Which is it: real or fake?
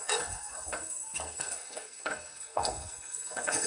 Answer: fake